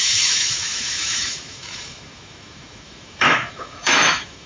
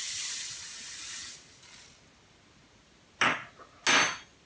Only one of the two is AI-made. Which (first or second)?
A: first